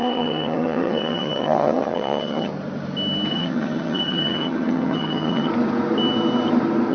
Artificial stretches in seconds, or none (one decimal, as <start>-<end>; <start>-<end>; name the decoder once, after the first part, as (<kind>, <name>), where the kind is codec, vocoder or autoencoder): 0.0-2.5 (vocoder, HiFi-GAN); 3.3-5.5